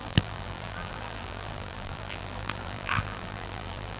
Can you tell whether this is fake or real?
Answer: fake